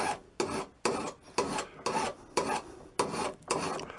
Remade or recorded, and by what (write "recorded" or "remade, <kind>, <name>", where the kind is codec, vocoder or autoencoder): recorded